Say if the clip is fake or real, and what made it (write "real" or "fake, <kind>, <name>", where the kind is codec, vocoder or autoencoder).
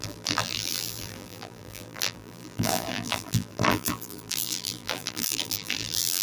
fake, vocoder, BigVGAN v2